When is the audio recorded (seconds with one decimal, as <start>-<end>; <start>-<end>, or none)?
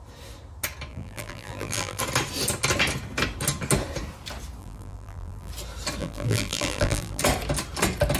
0.0-0.9; 2.0-4.6; 5.5-6.0; 7.2-8.2